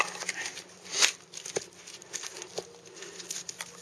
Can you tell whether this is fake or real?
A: real